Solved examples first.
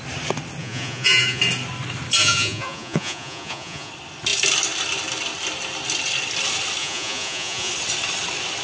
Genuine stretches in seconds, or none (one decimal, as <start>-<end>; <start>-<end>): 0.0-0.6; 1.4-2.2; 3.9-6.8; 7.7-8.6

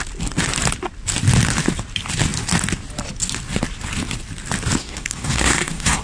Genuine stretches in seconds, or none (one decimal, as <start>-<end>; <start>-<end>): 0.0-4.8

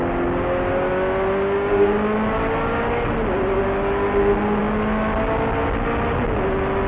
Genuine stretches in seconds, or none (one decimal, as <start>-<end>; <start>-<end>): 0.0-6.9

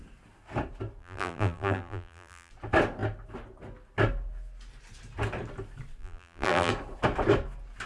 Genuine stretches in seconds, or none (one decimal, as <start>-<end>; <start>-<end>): 0.0-1.0; 2.5-6.0; 6.7-7.9

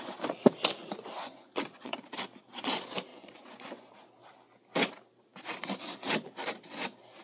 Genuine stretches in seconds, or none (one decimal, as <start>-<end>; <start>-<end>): 0.0-0.8; 2.0-3.1; 3.9-7.2

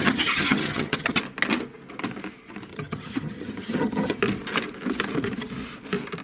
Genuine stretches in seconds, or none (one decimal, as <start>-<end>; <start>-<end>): 1.2-2.7; 4.2-6.2